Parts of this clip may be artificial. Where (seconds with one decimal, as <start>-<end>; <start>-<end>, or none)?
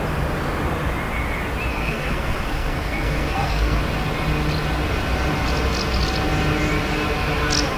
1.7-3.8